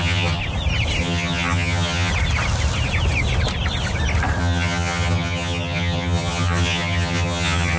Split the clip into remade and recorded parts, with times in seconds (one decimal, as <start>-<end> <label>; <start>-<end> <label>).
0.0-0.4 remade; 0.4-1.0 recorded; 1.0-2.1 remade; 2.1-4.4 recorded; 4.4-7.8 remade